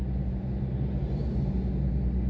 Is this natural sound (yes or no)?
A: yes